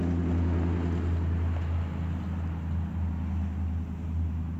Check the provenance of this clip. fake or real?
real